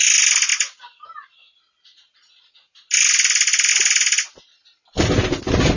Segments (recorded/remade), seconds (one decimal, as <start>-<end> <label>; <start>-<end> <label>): 0.0-5.8 recorded